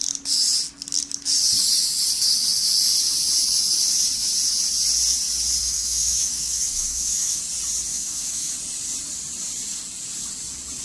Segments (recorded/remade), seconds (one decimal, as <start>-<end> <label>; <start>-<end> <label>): 0.0-5.6 recorded; 5.6-7.4 remade; 7.4-7.9 recorded; 7.9-8.5 remade; 8.5-10.8 recorded